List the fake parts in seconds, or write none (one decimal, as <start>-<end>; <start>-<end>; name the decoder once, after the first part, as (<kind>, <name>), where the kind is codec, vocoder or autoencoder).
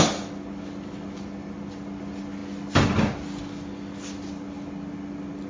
none